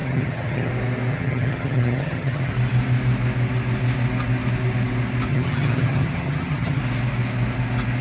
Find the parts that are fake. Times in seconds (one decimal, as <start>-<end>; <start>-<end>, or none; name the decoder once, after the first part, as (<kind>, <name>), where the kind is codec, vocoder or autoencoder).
0.0-0.7 (vocoder, HiFi-GAN); 1.1-2.5; 5.3-6.8